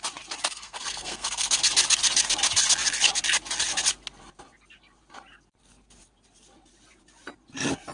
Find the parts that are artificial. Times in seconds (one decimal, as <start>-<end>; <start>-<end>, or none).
0.5-1.6

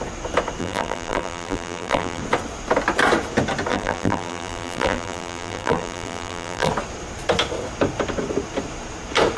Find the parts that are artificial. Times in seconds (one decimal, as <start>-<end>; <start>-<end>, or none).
0.6-2.2; 3.7-6.7

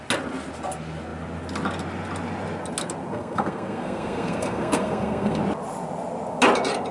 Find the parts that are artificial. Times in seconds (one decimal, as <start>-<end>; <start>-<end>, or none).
3.1-5.4

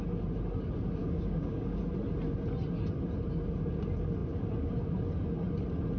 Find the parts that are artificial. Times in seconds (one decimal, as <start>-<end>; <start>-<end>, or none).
1.0-1.8

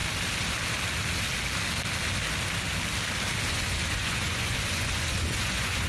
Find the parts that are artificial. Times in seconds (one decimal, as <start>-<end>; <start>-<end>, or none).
3.5-5.9

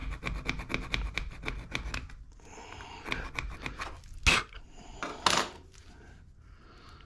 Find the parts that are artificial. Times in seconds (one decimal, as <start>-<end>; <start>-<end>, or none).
none

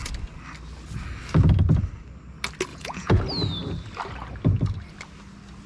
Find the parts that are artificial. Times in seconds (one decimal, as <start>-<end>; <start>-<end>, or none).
2.7-3.2

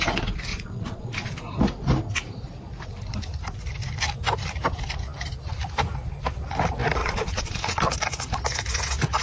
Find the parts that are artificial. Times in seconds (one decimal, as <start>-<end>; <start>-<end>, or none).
0.5-1.3; 7.0-7.9